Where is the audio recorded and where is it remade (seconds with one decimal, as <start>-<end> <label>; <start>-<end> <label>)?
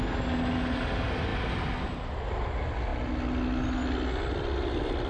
0.0-5.1 recorded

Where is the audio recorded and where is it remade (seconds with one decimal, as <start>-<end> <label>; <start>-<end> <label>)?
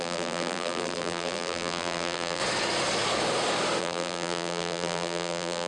0.0-2.4 remade; 2.4-3.8 recorded; 3.8-5.7 remade